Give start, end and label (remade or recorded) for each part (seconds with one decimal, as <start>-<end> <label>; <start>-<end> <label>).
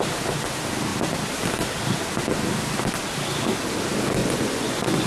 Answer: 0.0-4.2 recorded; 4.2-5.1 remade